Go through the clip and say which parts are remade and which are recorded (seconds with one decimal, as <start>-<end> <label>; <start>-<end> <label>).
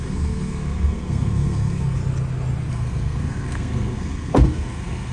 0.0-2.0 remade; 2.0-2.7 recorded; 2.7-5.1 remade